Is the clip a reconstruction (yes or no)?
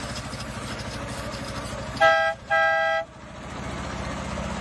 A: no